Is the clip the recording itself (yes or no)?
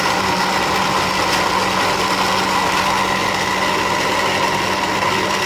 yes